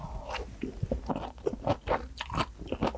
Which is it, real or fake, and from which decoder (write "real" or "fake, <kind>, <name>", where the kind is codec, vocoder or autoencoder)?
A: real